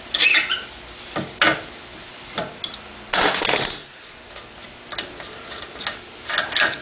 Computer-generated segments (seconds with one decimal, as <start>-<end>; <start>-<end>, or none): none

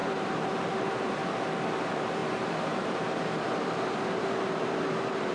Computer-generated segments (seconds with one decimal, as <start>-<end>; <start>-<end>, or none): 0.0-1.2; 1.8-5.3